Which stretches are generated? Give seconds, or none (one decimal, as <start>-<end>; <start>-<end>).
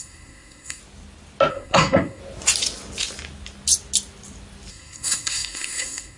0.0-0.8; 1.5-2.2; 4.7-6.2